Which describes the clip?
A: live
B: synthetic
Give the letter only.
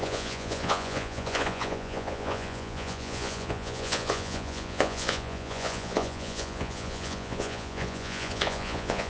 B